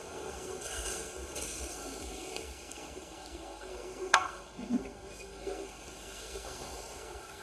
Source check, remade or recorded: remade